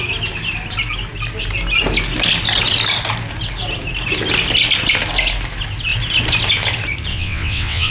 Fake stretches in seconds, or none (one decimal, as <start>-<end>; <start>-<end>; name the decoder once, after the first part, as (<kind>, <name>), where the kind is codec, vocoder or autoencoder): 7.1-7.9 (vocoder, WaveNeXt)